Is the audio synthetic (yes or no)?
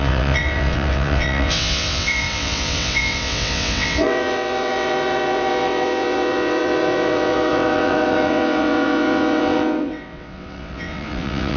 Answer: yes